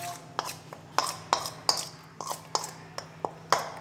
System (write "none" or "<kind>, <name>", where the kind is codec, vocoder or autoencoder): none